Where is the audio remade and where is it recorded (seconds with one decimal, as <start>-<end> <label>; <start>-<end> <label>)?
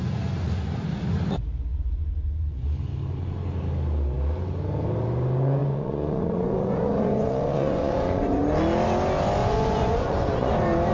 0.0-1.7 recorded; 1.7-2.6 remade; 2.6-5.6 recorded; 5.6-8.4 remade; 8.4-9.4 recorded; 9.4-10.5 remade; 10.5-10.9 recorded